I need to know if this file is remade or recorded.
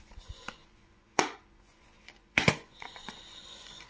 remade